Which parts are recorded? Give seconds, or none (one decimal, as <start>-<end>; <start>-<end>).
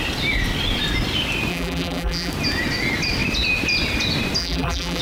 0.0-1.5; 2.3-4.4